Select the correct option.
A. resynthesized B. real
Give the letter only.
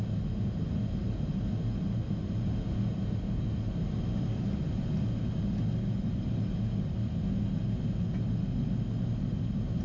B